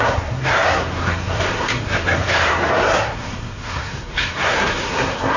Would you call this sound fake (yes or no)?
yes